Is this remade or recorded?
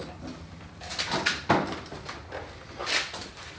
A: recorded